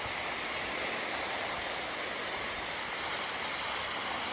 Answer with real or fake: real